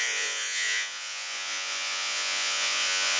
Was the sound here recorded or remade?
remade